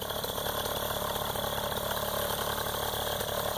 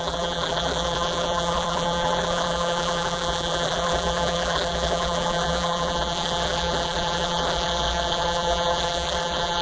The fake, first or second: second